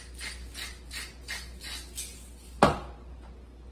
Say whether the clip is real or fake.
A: real